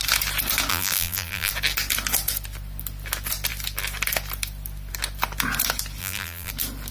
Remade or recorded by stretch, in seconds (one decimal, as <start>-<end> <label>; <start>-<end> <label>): 0.0-0.7 recorded; 0.7-1.5 remade; 1.5-6.0 recorded; 6.0-6.5 remade; 6.5-6.9 recorded